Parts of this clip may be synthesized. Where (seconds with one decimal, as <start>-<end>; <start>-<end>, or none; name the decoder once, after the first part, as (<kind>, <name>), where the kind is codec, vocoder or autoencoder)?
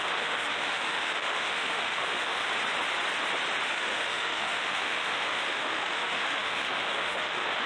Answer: 0.0-2.5 (autoencoder, DAC-VAE); 3.7-7.7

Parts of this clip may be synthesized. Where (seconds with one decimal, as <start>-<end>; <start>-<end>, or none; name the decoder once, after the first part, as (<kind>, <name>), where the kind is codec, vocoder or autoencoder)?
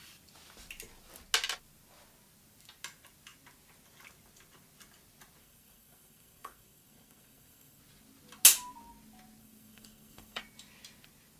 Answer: 5.4-7.8 (codec, SNAC); 9.4-10.4